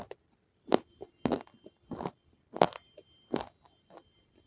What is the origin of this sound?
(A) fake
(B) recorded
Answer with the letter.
B